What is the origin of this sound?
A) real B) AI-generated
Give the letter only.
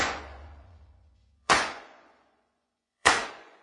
B